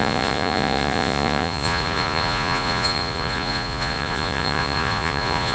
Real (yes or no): no